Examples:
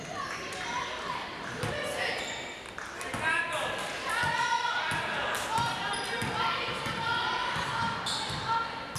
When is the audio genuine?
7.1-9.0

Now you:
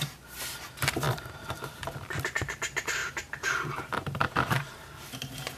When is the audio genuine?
0.0-1.1; 1.9-3.0; 4.7-5.6

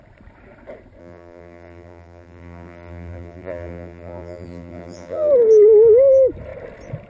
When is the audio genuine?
0.0-1.0; 5.3-7.1

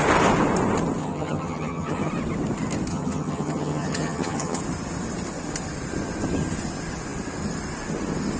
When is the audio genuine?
0.0-1.0; 2.1-2.9; 4.6-8.4

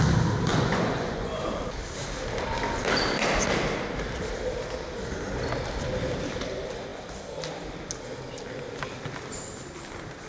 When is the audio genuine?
0.0-0.5; 1.4-10.3

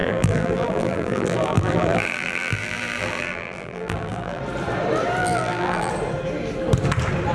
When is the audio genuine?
4.4-5.2; 5.9-7.3

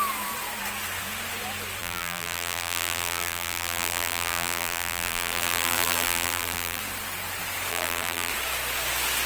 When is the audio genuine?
0.0-1.8; 6.8-7.7; 8.3-9.3

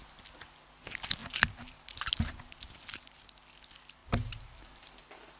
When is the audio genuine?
0.0-1.2; 2.1-4.0; 5.0-5.4